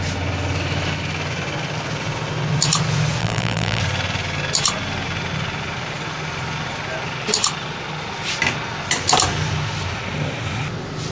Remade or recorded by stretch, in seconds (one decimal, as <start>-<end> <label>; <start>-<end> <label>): 0.0-3.2 recorded; 3.2-3.8 remade; 3.8-11.1 recorded

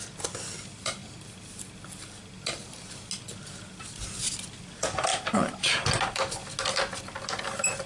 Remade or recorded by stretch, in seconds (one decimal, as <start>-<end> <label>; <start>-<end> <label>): 0.0-1.0 remade; 1.0-4.6 recorded; 4.6-5.1 remade; 5.1-6.0 recorded; 6.0-6.4 remade; 6.4-7.0 recorded; 7.0-7.9 remade

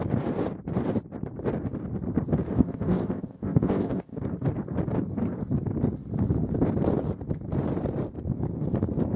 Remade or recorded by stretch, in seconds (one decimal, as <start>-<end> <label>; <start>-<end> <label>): 0.0-2.5 recorded; 2.5-4.2 remade; 4.2-9.2 recorded

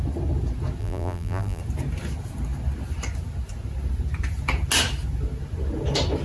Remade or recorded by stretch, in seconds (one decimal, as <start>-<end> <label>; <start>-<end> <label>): 0.0-0.8 recorded; 0.8-1.6 remade; 1.6-6.2 recorded

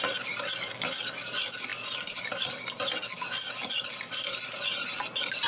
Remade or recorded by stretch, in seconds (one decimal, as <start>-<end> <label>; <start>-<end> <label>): 0.0-5.5 recorded